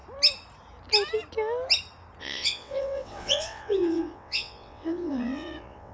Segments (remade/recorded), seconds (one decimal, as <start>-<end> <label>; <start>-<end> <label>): 0.0-2.2 recorded; 2.2-5.9 remade

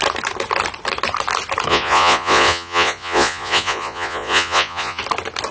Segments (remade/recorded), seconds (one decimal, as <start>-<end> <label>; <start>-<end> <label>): 0.0-1.7 recorded; 1.7-5.0 remade; 5.0-5.5 recorded

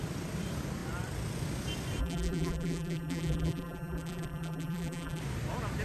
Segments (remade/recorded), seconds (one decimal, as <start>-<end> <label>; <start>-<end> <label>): 0.0-2.0 recorded; 2.0-5.2 remade; 5.2-5.8 recorded

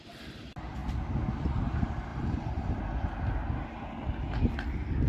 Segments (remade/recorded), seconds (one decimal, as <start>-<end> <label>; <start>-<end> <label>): 0.0-2.1 recorded; 2.1-2.8 remade; 2.8-5.1 recorded